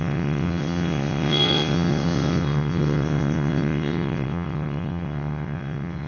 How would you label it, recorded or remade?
remade